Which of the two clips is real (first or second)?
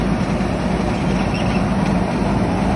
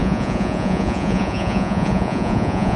first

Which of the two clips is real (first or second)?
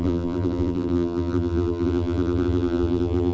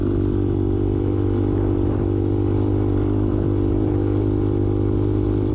second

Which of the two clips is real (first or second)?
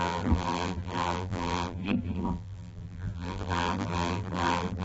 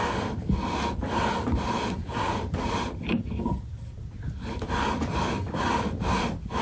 second